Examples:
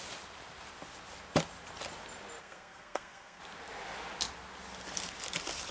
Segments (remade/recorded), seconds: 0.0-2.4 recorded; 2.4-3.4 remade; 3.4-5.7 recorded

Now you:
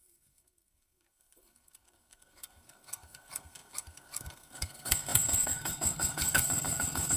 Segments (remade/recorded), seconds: 0.0-7.2 remade

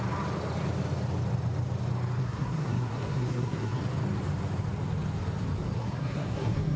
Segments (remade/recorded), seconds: 0.0-2.2 recorded; 2.2-3.8 remade; 3.8-5.8 recorded; 5.8-6.8 remade

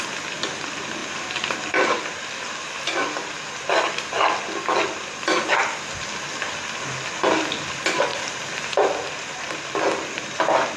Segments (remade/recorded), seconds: 0.0-10.8 recorded

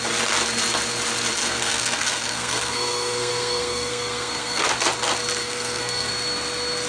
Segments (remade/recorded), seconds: 0.0-1.4 recorded; 1.4-4.7 remade; 4.7-5.4 recorded; 5.4-6.1 remade; 6.1-6.9 recorded